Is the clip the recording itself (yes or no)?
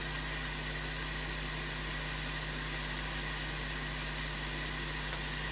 yes